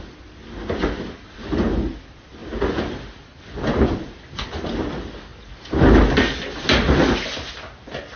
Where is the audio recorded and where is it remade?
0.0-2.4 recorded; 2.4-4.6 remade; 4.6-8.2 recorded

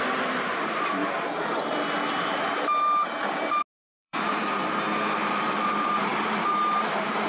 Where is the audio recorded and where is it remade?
0.0-1.0 remade; 1.0-4.0 recorded; 4.0-4.6 remade; 4.6-5.2 recorded; 5.2-7.3 remade

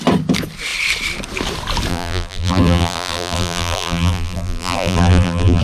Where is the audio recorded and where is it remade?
0.0-1.9 recorded; 1.9-5.6 remade

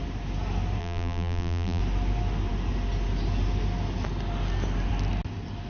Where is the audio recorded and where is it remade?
0.0-0.8 recorded; 0.8-1.8 remade; 1.8-5.7 recorded

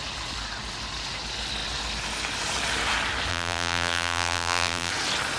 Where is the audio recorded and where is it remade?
0.0-3.3 recorded; 3.3-4.9 remade; 4.9-5.4 recorded

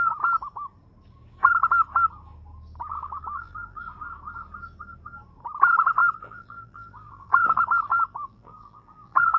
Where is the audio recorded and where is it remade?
0.0-2.9 recorded; 2.9-3.8 remade; 3.8-6.0 recorded; 6.0-9.4 remade

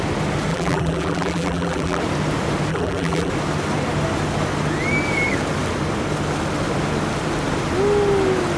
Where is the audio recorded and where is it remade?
0.0-0.5 recorded; 0.5-2.0 remade; 2.0-2.7 recorded; 2.7-3.3 remade; 3.3-8.6 recorded

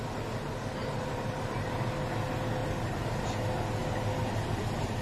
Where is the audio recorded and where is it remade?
0.0-0.8 recorded; 0.8-1.7 remade; 1.7-2.6 recorded; 2.6-3.1 remade; 3.1-5.0 recorded